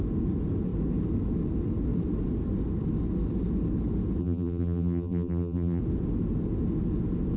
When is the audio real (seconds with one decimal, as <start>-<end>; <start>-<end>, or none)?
0.0-4.2; 5.8-7.4